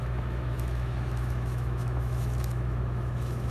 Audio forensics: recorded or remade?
remade